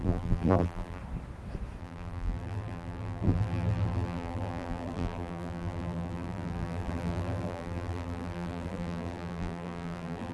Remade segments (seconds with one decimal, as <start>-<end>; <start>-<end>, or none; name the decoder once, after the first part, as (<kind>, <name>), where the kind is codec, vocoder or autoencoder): 0.0-1.0 (vocoder, BigVGAN v2); 1.8-10.3